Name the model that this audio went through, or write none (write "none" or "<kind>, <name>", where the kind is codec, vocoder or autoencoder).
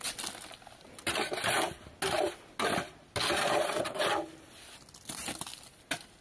none